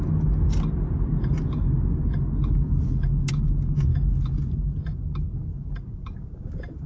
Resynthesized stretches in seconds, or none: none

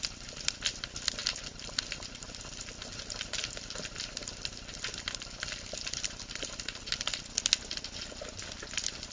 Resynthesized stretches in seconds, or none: none

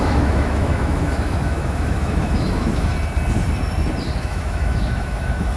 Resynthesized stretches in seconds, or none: 0.0-2.9 (autoencoder, DAC-VAE); 4.2-5.6

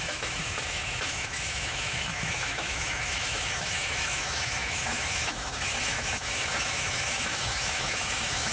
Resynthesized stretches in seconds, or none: 0.0-8.5 (autoencoder, DAC-VAE)

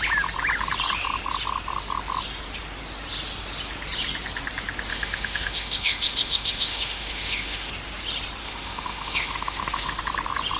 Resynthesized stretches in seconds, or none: 4.9-7.7 (autoencoder, DAC-VAE); 8.4-10.0